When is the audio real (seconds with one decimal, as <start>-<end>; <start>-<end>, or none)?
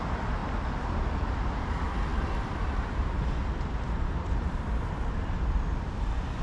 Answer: 0.0-6.4